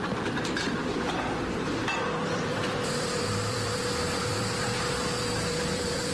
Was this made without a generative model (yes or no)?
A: no